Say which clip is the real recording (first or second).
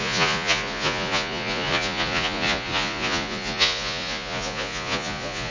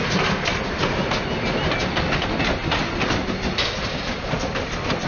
second